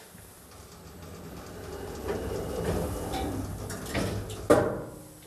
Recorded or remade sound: recorded